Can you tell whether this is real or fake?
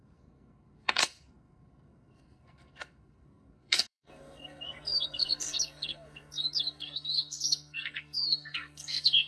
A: fake